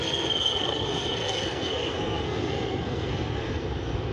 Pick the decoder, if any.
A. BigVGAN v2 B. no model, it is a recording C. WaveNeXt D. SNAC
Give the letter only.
D